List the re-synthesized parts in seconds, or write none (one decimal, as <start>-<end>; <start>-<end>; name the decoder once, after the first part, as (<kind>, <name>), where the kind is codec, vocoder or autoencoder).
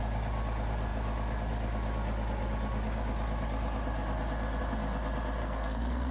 5.4-6.1 (codec, SNAC)